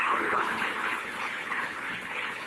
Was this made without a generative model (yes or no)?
no